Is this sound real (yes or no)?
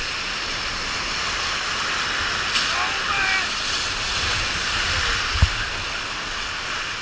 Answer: yes